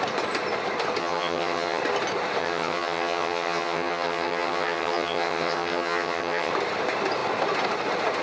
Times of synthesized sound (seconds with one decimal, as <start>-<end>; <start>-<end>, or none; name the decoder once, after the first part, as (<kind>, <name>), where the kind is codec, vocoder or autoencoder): 1.0-1.8 (vocoder, HiFi-GAN); 2.4-6.5

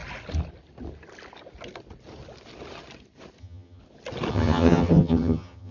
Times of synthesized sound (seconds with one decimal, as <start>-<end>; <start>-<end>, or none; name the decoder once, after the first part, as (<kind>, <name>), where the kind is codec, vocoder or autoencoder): 3.4-3.8 (vocoder, HiFi-GAN); 4.3-5.7

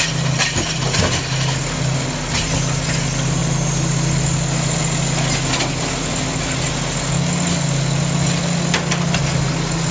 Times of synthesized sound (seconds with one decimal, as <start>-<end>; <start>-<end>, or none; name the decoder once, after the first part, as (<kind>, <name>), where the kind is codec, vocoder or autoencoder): none

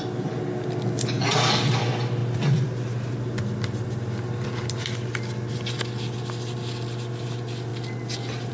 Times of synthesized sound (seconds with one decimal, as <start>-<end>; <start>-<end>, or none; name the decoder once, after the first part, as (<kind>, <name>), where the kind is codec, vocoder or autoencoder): none

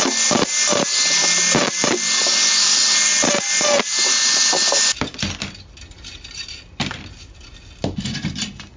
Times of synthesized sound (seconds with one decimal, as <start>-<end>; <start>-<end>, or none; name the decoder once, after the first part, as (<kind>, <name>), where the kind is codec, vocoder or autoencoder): none

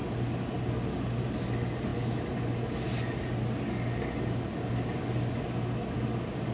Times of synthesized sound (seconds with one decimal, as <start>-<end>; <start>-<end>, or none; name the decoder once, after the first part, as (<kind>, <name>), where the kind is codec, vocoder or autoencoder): none

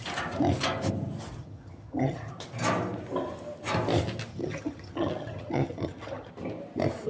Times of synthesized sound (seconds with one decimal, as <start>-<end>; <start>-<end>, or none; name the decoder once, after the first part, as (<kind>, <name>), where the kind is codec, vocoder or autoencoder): 1.4-2.3 (vocoder, HiFi-GAN); 4.3-6.3

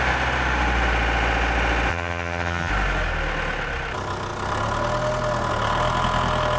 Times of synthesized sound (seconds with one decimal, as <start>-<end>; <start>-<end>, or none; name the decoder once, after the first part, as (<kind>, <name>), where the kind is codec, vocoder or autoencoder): 1.9-2.7 (vocoder, HiFi-GAN)